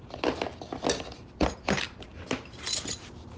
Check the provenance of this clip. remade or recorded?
recorded